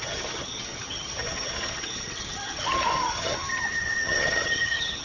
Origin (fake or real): fake